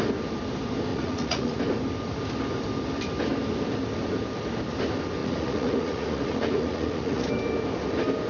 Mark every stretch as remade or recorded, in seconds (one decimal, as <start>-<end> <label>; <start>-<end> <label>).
0.0-0.9 recorded; 0.9-1.6 remade; 1.6-5.2 recorded; 5.2-7.3 remade; 7.3-8.3 recorded